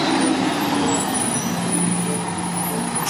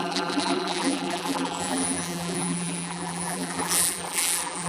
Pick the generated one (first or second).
second